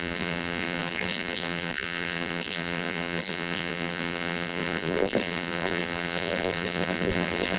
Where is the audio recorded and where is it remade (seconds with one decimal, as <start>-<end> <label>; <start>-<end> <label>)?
0.0-7.6 remade